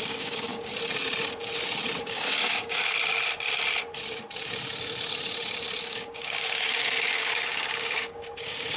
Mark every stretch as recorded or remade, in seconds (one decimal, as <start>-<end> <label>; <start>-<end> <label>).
0.0-0.7 remade; 0.7-2.0 recorded; 2.0-3.0 remade; 3.0-5.8 recorded; 5.8-8.8 remade